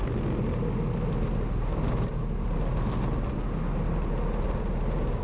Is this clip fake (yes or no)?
no